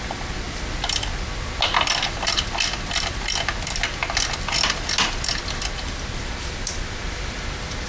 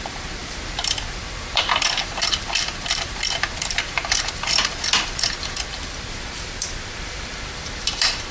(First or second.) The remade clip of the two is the second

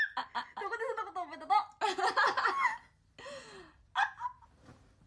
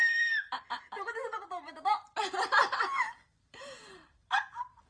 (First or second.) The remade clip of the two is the second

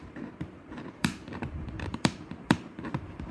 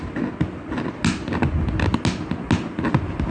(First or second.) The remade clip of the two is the first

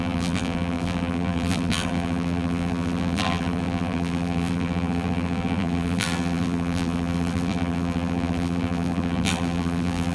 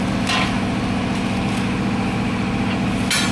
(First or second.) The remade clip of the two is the first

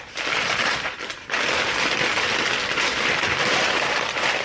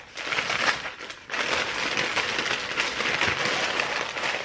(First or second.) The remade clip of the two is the first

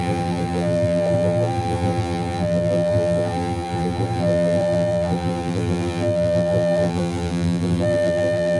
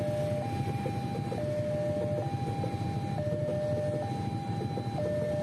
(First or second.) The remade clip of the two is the first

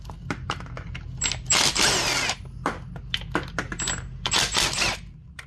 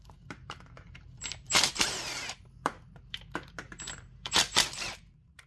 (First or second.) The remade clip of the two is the second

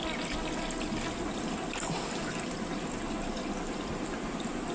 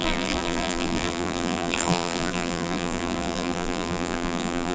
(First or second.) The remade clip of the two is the second